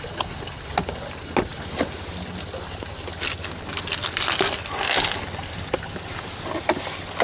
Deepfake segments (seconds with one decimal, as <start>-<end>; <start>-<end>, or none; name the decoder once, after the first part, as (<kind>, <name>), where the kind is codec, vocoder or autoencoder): none